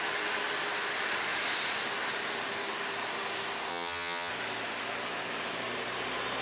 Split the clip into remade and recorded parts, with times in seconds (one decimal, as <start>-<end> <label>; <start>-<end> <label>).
0.0-3.7 recorded; 3.7-4.3 remade; 4.3-6.4 recorded